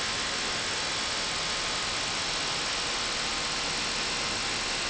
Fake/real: real